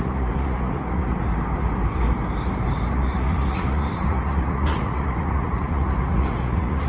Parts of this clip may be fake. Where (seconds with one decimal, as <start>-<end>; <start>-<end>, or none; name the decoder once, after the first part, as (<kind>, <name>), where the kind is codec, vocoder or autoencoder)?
0.0-1.3 (vocoder, Vocos); 2.9-6.9